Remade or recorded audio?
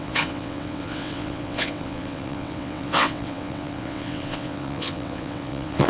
remade